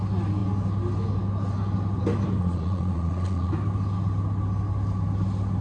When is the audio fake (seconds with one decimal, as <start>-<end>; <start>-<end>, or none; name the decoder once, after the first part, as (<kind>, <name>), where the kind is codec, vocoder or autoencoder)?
2.4-3.5 (vocoder, Vocos)